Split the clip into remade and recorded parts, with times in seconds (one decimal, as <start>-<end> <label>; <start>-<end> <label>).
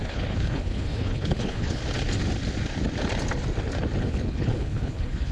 0.0-1.8 remade; 1.8-4.0 recorded; 4.0-5.3 remade